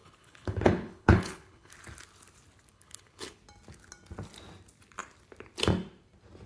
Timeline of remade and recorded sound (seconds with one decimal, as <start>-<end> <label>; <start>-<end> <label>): 0.0-1.7 remade; 1.7-2.7 recorded; 2.7-3.4 remade; 3.4-6.5 recorded